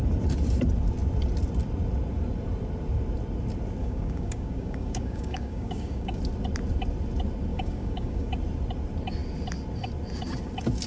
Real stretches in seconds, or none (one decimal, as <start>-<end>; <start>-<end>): 0.0-3.8; 6.2-7.5; 8.3-10.9